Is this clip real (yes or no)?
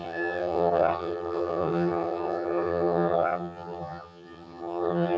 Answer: no